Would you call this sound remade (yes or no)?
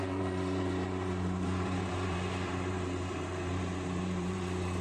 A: yes